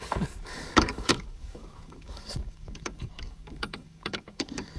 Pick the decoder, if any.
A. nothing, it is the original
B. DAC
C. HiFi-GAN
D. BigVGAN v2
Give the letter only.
B